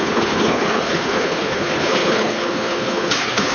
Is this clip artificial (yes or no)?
yes